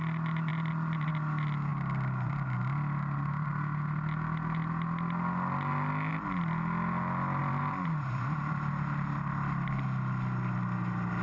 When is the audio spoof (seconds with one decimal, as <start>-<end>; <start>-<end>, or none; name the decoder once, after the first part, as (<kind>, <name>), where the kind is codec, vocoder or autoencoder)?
0.5-1.1 (vocoder, BigVGAN v2); 7.4-8.7